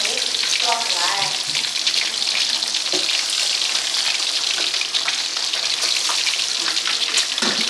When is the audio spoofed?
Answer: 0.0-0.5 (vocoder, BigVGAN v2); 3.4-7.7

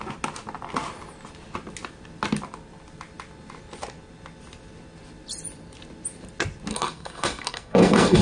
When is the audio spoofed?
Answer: 6.7-8.2 (codec, SNAC)

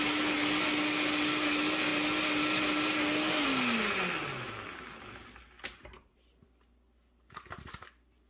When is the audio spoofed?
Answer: none

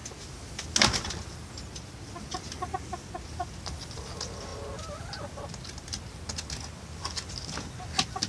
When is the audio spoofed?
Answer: none

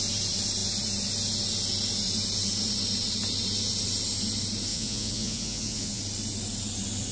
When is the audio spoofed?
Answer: 4.7-6.0 (vocoder, Vocos)

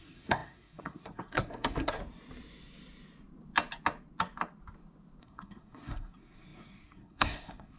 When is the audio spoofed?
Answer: 0.0-2.0 (codec, SNAC); 5.2-7.8